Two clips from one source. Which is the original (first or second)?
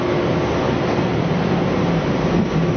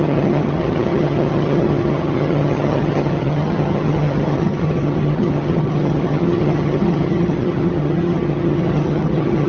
first